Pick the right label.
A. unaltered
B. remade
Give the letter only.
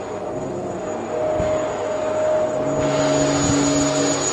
A